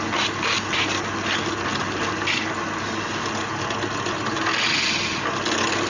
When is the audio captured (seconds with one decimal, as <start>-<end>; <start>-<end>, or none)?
0.0-5.9

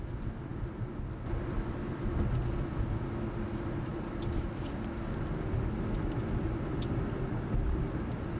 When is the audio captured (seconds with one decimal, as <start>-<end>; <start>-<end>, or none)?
0.0-8.4